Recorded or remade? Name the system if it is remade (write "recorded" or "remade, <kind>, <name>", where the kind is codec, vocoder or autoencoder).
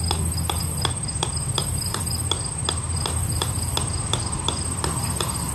recorded